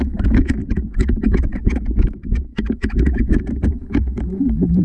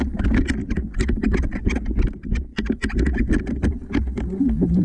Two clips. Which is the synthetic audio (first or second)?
first